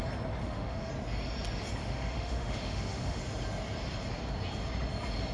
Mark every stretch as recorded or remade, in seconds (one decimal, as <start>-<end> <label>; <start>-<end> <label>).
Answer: 0.0-0.4 recorded; 0.4-0.9 remade; 0.9-1.8 recorded; 1.8-3.2 remade; 3.2-5.3 recorded